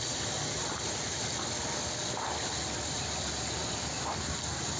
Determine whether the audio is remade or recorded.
recorded